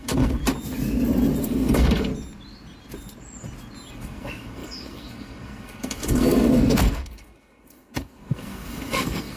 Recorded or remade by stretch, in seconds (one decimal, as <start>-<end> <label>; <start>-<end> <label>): 0.0-0.4 remade; 0.4-1.4 recorded; 1.4-2.1 remade; 2.1-3.9 recorded; 3.9-9.4 remade